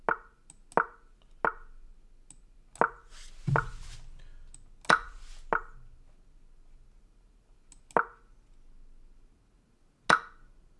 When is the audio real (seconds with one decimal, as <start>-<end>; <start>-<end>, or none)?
0.0-10.8